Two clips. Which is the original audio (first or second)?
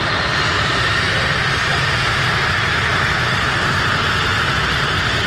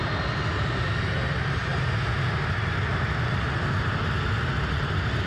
second